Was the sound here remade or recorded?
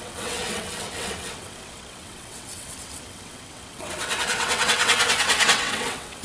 remade